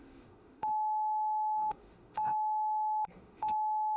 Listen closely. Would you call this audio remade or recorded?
remade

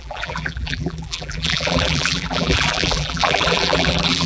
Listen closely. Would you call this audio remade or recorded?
remade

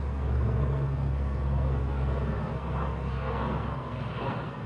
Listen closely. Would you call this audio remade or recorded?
remade